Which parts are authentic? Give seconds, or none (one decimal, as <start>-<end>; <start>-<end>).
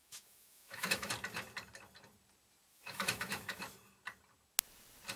1.1-2.7; 3.6-5.2